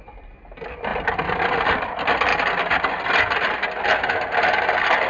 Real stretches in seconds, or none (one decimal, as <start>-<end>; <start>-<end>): 0.0-5.1